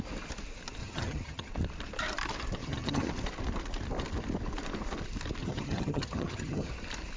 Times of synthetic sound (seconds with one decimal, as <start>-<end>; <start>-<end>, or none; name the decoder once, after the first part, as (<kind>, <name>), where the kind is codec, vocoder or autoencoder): 0.8-1.5 (vocoder, HiFi-GAN); 2.6-3.1; 5.4-6.7